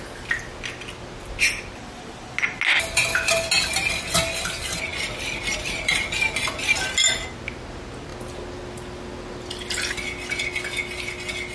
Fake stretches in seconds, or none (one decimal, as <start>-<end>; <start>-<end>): none